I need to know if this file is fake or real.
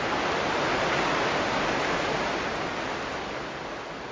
real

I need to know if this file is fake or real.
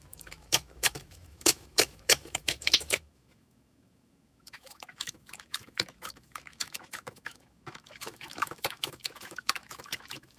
fake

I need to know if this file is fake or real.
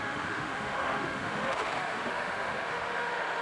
fake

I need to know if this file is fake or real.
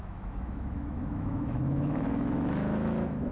fake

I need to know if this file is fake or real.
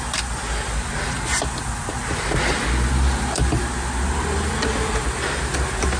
real